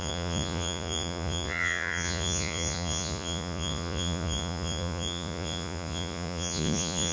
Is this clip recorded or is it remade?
remade